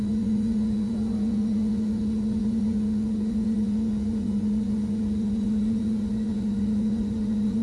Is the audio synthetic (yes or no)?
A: yes